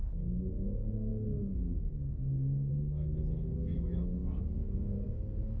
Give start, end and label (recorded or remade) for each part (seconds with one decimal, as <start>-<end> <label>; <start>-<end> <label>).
0.0-5.6 remade